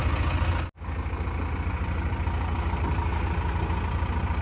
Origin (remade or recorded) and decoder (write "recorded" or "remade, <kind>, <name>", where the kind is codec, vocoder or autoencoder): recorded